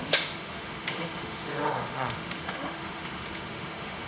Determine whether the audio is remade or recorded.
remade